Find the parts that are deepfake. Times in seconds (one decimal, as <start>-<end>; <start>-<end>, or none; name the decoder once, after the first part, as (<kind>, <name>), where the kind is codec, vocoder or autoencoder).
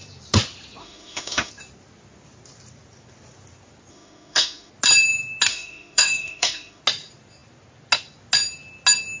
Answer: 0.8-1.5 (autoencoder, DAC-VAE); 3.9-4.7; 5.5-6.8